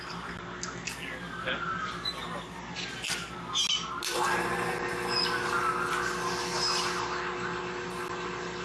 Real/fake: real